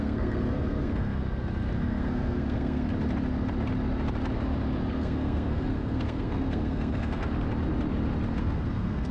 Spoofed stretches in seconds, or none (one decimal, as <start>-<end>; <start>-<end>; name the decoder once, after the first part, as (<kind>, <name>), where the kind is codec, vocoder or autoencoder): 0.0-1.2 (codec, SNAC); 1.8-2.9; 4.9-7.2; 8.4-9.1